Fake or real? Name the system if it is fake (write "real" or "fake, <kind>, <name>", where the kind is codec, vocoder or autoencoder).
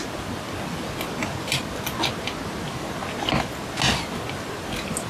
real